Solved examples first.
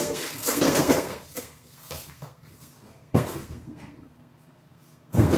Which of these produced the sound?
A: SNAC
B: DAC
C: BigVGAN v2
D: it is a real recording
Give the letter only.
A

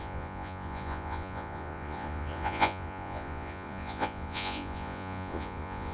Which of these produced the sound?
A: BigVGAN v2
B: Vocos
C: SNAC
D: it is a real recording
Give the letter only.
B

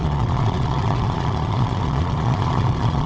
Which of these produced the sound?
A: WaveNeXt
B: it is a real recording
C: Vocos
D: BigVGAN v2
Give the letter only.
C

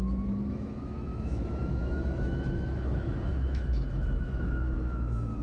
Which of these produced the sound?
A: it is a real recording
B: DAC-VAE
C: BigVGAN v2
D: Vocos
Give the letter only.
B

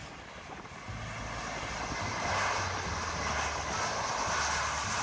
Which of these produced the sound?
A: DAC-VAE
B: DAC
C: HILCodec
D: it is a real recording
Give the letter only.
D